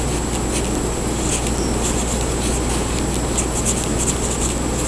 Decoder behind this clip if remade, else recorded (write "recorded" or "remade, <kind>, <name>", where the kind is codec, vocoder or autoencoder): recorded